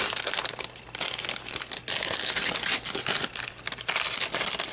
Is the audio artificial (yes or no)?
no